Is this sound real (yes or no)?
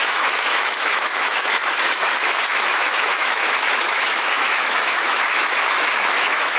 no